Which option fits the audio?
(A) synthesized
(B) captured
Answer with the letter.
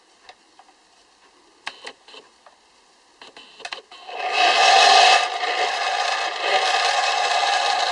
B